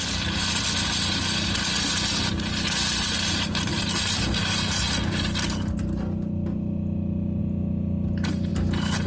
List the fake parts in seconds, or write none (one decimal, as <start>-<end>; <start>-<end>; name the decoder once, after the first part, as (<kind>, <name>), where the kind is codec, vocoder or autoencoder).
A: none